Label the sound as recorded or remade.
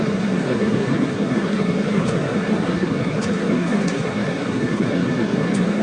remade